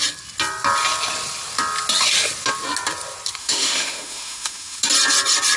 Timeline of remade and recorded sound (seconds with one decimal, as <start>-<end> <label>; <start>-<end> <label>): 0.0-3.4 recorded; 3.4-4.8 remade; 4.8-5.6 recorded